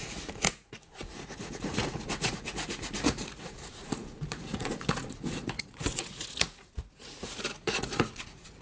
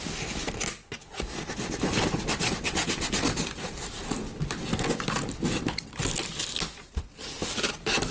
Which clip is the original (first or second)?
second